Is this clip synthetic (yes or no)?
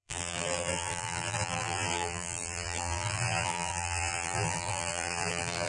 yes